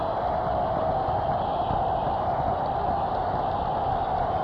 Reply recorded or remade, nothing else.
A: recorded